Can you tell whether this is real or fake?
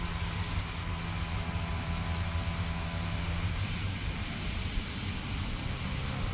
real